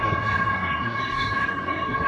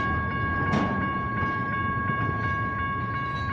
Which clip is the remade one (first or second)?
first